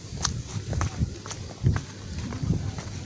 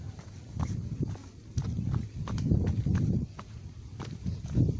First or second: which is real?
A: first